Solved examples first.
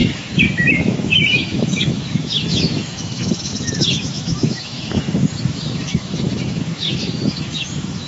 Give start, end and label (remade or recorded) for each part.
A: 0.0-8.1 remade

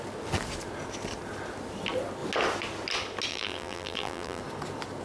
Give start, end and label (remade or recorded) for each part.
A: 0.0-3.3 recorded; 3.3-4.4 remade; 4.4-5.0 recorded

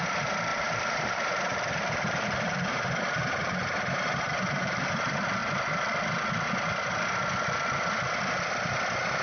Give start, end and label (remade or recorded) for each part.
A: 0.0-0.5 recorded; 0.5-5.0 remade; 5.0-9.2 recorded

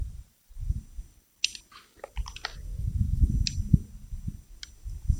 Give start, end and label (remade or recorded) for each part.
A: 0.0-0.8 remade; 0.8-2.7 recorded; 2.7-3.3 remade; 3.3-5.2 recorded

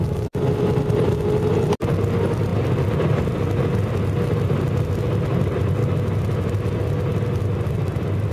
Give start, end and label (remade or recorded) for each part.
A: 0.0-8.3 recorded

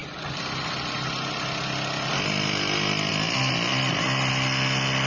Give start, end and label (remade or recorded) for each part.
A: 0.0-5.1 recorded

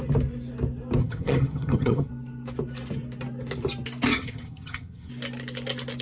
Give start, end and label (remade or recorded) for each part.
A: 0.0-1.0 recorded; 1.0-2.1 remade; 2.1-4.1 recorded; 4.1-5.1 remade; 5.1-6.0 recorded

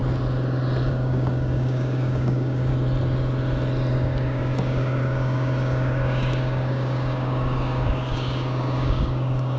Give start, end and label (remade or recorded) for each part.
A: 0.0-0.9 recorded; 0.9-2.7 remade; 2.7-3.9 recorded; 3.9-9.6 remade